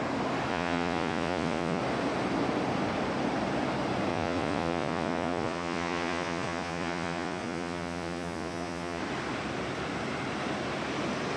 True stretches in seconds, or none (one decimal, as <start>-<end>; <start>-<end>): 0.0-0.5; 1.8-4.1; 9.0-11.4